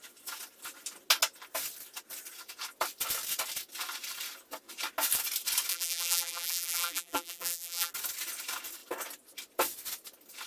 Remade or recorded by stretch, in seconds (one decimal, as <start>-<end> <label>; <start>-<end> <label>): 0.0-5.7 recorded; 5.7-7.9 remade; 7.9-10.5 recorded